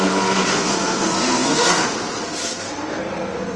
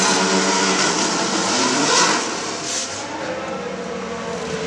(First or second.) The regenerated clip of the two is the first